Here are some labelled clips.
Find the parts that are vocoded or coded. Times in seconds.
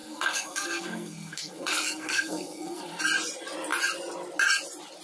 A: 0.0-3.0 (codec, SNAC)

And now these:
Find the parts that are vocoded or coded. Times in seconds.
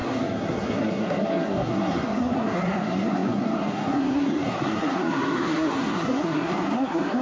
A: 0.0-7.2 (codec, SNAC)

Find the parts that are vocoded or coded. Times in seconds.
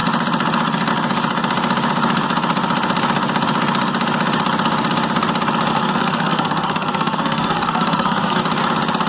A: 5.7-8.4 (codec, SNAC)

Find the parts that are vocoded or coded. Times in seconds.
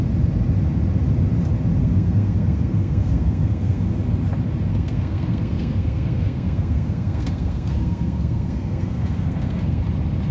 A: 1.8-3.8 (codec, SNAC); 4.7-9.8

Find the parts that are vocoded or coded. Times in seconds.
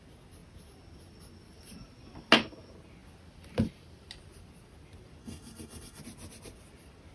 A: 5.2-6.0 (codec, SNAC)